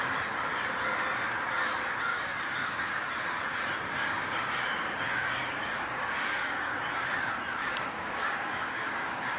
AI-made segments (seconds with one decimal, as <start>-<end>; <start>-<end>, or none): 2.1-3.1; 4.0-6.9; 7.6-9.4